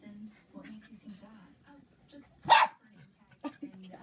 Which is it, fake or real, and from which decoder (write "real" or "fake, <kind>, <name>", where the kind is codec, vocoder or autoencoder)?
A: real